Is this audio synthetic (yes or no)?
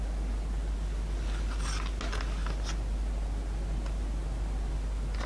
no